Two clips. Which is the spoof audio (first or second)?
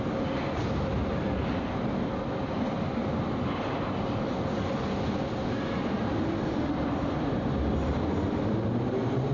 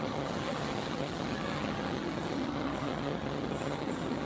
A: second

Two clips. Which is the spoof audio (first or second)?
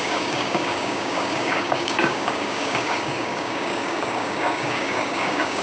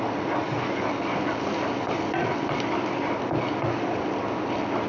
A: first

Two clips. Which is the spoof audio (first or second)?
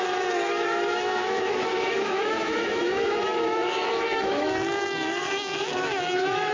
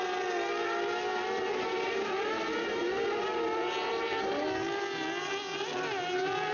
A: first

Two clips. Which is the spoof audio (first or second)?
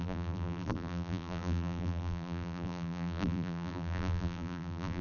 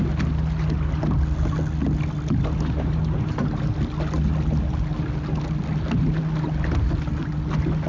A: first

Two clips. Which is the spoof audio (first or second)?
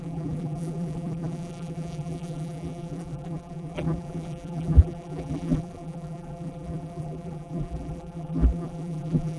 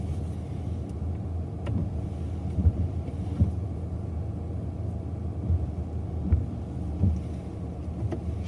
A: first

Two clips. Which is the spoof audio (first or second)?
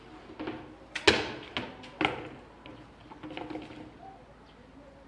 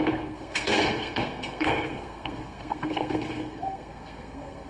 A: second